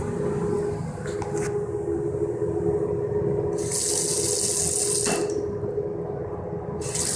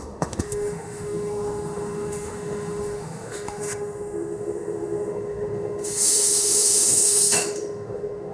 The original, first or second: first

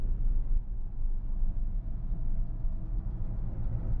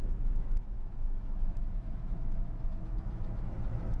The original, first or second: first